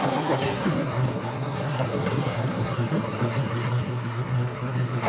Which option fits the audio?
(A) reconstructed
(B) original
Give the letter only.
A